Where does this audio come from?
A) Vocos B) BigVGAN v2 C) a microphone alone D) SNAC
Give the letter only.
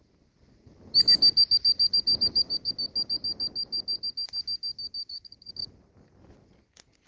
C